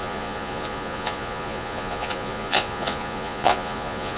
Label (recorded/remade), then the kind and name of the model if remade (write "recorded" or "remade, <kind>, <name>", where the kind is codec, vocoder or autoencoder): remade, vocoder, Vocos